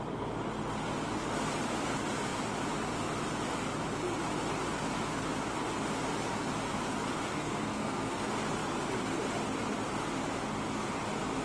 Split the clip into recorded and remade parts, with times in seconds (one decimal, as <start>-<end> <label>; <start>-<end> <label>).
0.0-7.3 recorded; 7.3-8.2 remade; 8.2-11.4 recorded